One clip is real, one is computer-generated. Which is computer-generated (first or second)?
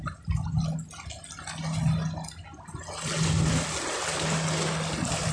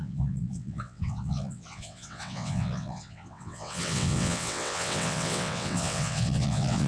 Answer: second